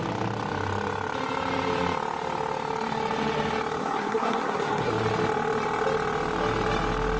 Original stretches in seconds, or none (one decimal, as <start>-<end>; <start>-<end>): 0.0-3.8; 4.9-7.2